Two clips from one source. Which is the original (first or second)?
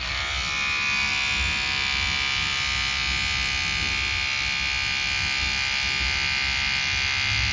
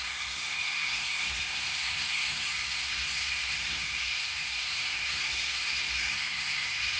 first